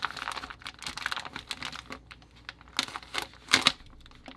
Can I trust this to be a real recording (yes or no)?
yes